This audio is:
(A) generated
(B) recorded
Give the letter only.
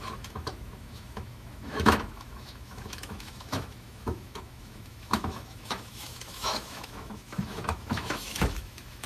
A